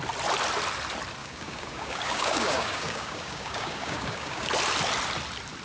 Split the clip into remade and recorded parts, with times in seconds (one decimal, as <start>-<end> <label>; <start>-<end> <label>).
0.0-1.2 recorded; 1.2-4.5 remade; 4.5-5.6 recorded